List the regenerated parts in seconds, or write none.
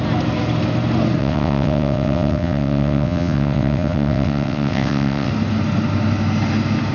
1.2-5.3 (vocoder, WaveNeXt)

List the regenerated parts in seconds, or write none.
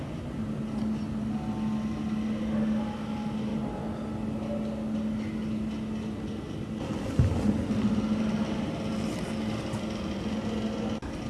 none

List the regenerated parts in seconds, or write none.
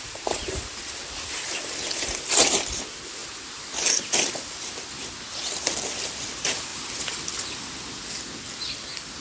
none